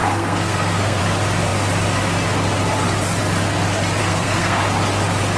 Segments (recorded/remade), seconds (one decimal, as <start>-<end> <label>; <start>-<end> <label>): 0.0-1.0 remade; 1.0-4.0 recorded; 4.0-4.6 remade; 4.6-5.4 recorded